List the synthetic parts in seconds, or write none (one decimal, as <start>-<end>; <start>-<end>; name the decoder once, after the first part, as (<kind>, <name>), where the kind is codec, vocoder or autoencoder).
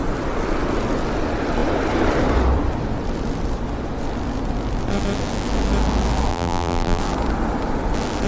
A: 6.3-7.0 (vocoder, BigVGAN v2)